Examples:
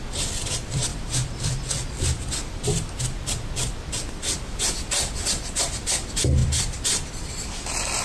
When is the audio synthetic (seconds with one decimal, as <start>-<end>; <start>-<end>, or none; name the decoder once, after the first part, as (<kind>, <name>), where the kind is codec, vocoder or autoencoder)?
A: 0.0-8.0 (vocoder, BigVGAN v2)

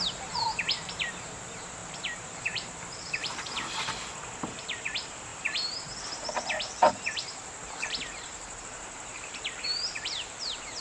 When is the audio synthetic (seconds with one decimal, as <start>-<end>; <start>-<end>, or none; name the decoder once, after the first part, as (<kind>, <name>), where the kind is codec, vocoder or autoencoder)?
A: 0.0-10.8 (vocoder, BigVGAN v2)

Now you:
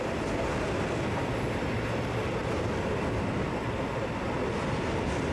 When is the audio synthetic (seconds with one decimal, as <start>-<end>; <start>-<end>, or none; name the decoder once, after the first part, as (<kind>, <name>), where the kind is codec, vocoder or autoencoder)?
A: none

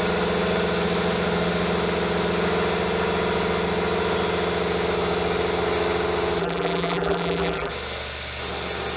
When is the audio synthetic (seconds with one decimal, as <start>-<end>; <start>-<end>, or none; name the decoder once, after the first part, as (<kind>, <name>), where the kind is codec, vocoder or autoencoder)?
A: 6.4-7.7 (vocoder, BigVGAN v2)

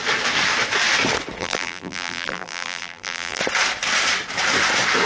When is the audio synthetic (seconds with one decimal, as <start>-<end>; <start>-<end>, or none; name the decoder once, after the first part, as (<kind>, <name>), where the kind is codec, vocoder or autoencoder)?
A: 1.4-3.4 (vocoder, BigVGAN v2)

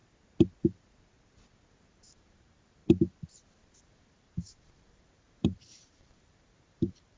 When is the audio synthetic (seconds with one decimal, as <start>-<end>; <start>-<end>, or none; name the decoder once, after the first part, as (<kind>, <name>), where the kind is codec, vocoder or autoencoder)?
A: 1.9-2.8 (vocoder, BigVGAN v2); 3.8-7.2

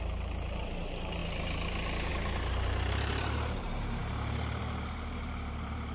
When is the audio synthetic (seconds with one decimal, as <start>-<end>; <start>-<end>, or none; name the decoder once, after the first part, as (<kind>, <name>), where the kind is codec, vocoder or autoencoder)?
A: 0.0-1.2 (vocoder, BigVGAN v2); 2.1-5.9

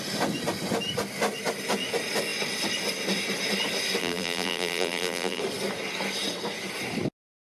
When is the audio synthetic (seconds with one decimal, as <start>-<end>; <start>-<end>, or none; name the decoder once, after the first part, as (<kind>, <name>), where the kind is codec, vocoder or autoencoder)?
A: 4.0-5.4 (vocoder, BigVGAN v2)